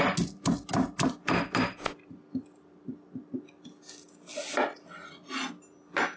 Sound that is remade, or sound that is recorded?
recorded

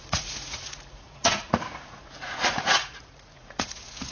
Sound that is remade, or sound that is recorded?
remade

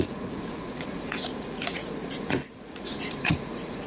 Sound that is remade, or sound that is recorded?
remade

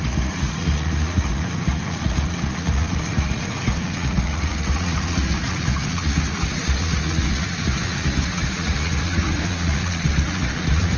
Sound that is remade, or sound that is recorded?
remade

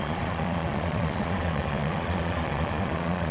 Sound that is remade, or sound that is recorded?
remade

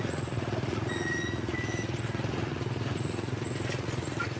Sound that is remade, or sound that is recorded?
remade